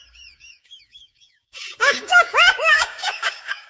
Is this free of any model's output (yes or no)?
no